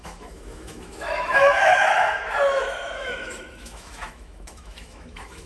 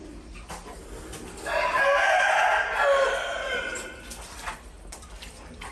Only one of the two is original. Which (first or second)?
second